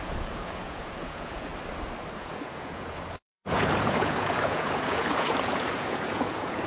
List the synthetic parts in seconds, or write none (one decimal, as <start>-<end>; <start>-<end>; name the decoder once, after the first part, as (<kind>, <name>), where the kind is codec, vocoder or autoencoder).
0.0-1.5 (vocoder, Vocos); 2.2-6.7